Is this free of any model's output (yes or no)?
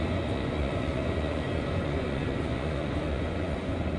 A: no